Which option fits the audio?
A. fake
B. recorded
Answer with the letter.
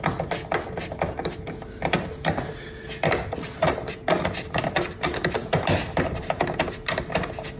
B